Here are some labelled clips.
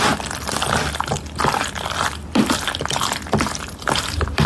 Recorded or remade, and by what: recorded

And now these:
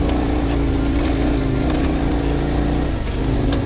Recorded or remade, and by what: recorded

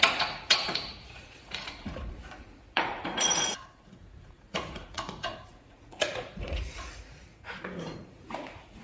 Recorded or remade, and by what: remade, vocoder, Vocos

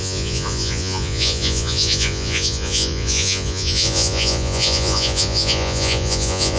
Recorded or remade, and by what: remade, vocoder, Vocos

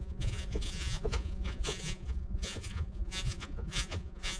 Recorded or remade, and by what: remade, vocoder, Vocos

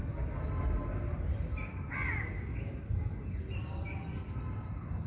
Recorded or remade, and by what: recorded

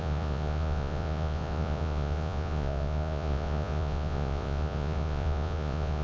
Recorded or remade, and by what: remade, vocoder, Vocos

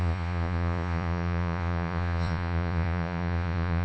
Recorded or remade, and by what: remade, vocoder, Vocos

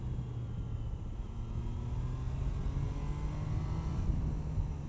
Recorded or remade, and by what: recorded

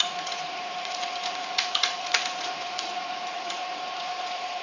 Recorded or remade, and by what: remade, vocoder, Vocos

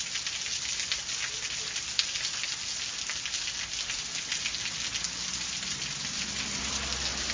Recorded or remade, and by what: recorded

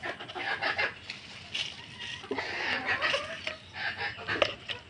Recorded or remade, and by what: recorded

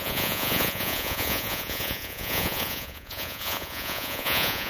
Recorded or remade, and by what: remade, vocoder, Vocos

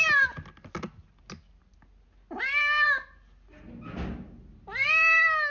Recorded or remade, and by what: recorded